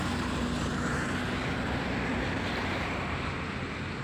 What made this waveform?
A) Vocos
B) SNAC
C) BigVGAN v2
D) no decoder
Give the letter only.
C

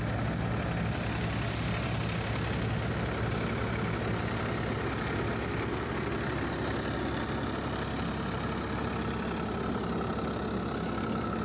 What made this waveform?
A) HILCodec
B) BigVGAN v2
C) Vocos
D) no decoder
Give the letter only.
D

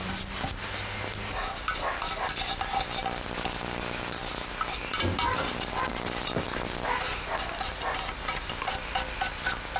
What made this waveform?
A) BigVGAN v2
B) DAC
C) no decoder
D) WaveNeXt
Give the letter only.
C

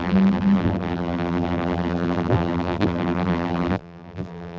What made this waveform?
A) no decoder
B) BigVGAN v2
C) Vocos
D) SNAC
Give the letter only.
B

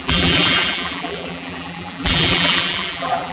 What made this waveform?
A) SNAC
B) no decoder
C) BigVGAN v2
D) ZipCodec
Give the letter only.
C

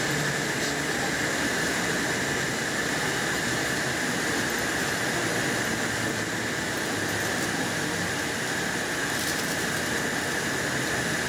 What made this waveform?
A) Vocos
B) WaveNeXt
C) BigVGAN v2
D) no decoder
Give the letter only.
D